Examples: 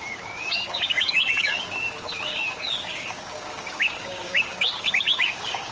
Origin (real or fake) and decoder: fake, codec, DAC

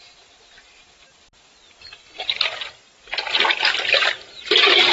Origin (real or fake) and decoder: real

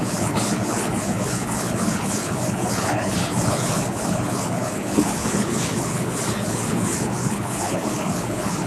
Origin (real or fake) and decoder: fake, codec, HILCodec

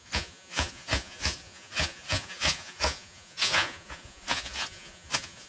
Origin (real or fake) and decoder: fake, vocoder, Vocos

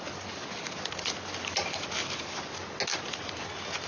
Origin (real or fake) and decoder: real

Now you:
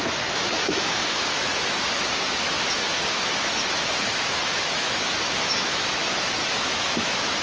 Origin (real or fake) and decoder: fake, autoencoder, DAC-VAE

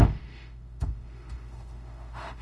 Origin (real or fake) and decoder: fake, autoencoder, DAC-VAE